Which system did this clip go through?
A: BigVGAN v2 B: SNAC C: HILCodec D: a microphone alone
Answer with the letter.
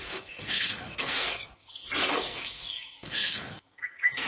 B